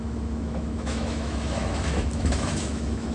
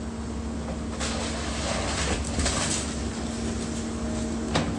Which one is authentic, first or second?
second